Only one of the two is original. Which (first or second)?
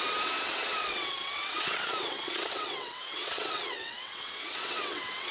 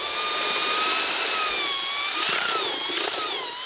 second